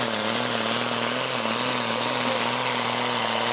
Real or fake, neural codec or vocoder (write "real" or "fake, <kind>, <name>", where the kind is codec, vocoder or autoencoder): real